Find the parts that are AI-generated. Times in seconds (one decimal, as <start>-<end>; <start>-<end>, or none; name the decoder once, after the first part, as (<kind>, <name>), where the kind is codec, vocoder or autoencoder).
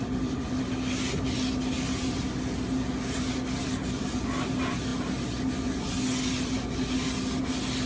none